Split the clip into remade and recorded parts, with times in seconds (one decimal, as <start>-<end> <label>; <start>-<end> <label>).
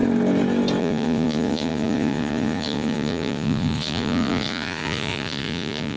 0.0-0.8 recorded; 0.8-6.0 remade